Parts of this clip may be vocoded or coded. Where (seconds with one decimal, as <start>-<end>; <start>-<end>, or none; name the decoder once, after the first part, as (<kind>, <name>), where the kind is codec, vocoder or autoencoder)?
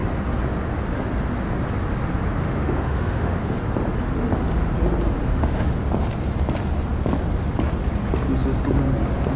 2.4-3.6 (autoencoder, DAC-VAE); 5.2-5.8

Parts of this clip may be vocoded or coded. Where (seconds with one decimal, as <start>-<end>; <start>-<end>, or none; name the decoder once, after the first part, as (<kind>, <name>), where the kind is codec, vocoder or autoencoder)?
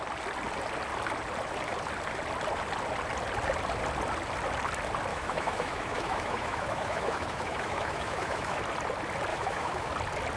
5.1-8.6 (autoencoder, DAC-VAE); 9.3-9.9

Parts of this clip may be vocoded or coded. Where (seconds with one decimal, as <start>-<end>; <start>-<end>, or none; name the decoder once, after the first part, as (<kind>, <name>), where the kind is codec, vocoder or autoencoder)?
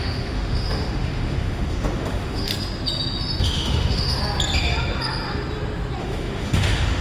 0.0-2.5 (autoencoder, DAC-VAE); 3.4-4.2; 6.0-7.0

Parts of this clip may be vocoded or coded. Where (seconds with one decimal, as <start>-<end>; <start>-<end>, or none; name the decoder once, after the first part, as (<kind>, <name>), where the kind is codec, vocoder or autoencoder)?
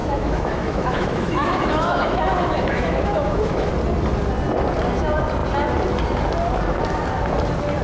0.0-3.7 (autoencoder, DAC-VAE)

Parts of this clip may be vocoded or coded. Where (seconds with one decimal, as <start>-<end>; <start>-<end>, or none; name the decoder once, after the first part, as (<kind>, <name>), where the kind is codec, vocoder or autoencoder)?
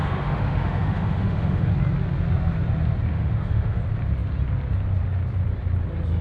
0.0-1.7 (autoencoder, DAC-VAE); 3.1-3.8